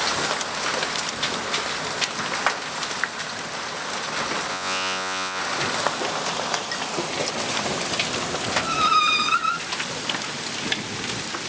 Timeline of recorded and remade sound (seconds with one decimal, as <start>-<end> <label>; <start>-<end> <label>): 0.0-4.5 recorded; 4.5-5.4 remade; 5.4-11.5 recorded